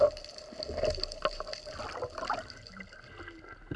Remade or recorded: recorded